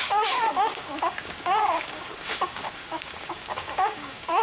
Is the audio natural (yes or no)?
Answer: no